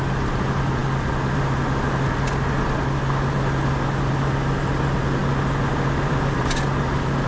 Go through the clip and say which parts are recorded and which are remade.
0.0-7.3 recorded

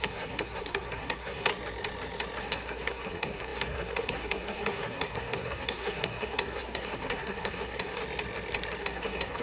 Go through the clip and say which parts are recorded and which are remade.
0.0-1.5 remade; 1.5-2.4 recorded; 2.4-8.0 remade; 8.0-8.8 recorded; 8.8-9.4 remade

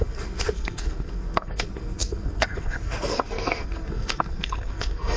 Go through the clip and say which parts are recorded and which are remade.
0.0-5.2 remade